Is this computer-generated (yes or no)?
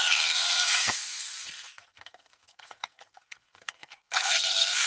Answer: yes